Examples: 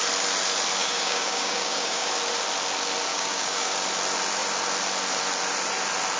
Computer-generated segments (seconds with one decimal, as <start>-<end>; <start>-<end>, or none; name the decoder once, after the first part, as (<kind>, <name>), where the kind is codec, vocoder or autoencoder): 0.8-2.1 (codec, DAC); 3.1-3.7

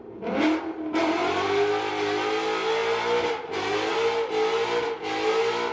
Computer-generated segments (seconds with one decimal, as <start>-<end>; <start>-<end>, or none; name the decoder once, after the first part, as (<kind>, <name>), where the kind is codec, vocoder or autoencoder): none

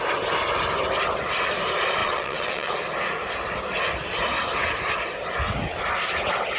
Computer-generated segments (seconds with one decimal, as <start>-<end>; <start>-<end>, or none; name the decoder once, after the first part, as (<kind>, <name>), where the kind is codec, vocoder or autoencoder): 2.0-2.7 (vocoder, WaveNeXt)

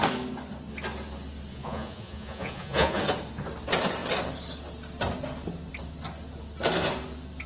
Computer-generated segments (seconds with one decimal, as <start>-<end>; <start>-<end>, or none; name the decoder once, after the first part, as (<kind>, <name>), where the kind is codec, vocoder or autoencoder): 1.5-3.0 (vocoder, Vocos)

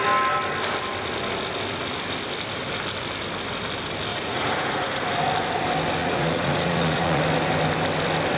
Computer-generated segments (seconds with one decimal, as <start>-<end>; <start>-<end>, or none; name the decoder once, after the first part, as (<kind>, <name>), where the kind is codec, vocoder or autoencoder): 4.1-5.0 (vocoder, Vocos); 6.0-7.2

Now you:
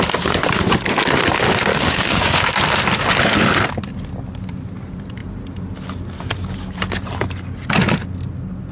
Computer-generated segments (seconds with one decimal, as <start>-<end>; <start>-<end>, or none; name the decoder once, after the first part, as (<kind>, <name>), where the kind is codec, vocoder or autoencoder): 1.7-2.5 (codec, DAC)

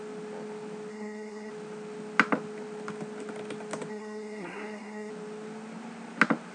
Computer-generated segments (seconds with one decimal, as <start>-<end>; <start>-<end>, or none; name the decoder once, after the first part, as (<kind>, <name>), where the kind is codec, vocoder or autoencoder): 0.9-1.5 (codec, SNAC); 3.9-5.1